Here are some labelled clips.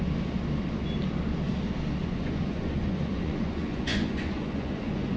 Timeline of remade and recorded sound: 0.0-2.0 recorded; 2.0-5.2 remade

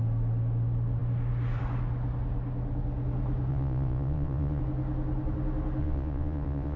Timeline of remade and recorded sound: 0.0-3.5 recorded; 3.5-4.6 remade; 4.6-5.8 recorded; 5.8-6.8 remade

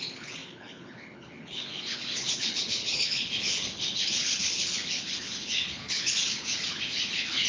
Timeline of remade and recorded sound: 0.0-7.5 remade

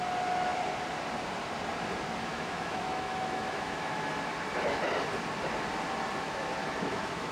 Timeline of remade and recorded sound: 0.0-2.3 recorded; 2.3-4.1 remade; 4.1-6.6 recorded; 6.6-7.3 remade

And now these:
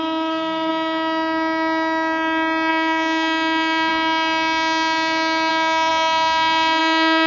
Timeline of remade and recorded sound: 0.0-0.7 remade; 0.7-2.7 recorded; 2.7-3.9 remade; 3.9-5.5 recorded; 5.5-7.3 remade

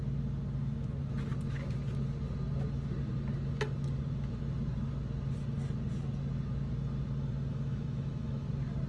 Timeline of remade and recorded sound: 0.0-7.5 recorded; 7.5-8.5 remade; 8.5-8.9 recorded

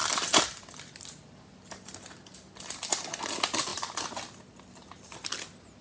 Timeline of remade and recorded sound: 0.0-5.8 recorded